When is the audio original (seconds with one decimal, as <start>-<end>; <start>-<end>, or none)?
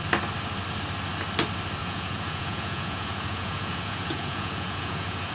0.0-1.8